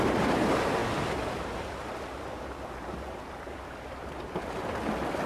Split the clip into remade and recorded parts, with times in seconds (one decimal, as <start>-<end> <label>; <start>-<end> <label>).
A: 0.0-5.3 recorded